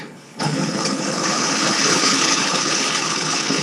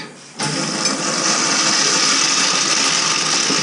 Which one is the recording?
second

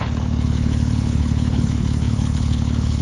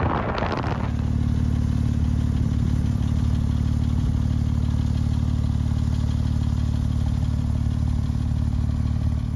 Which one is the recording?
second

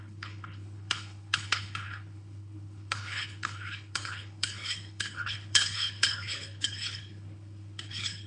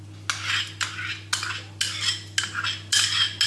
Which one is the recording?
second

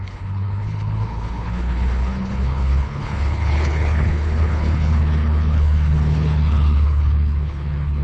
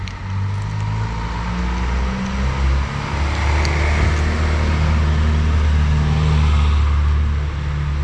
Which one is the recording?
second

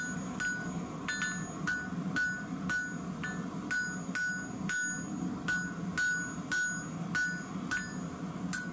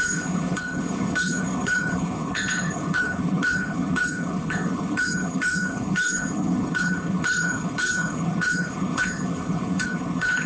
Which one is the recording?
first